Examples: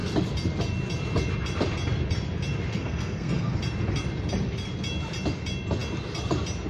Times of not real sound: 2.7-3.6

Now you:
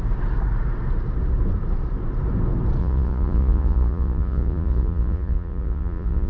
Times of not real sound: 2.8-6.3